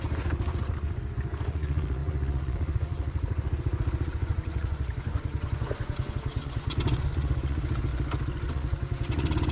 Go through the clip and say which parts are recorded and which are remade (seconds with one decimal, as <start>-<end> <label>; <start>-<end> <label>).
0.0-7.9 remade; 7.9-8.5 recorded; 8.5-9.5 remade